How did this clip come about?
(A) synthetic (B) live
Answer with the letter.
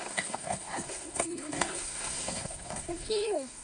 A